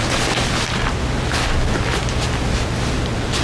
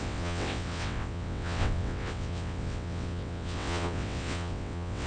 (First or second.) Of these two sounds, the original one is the first